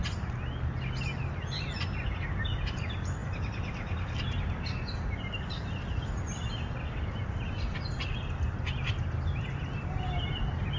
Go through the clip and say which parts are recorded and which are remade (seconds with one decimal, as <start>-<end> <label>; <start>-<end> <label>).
0.0-10.8 recorded